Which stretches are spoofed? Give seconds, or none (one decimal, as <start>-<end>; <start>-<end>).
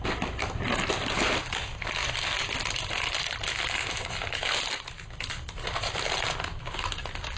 none